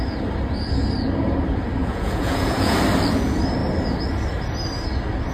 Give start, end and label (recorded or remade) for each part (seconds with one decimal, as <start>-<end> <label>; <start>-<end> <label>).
0.0-1.8 recorded; 1.8-2.8 remade; 2.8-5.3 recorded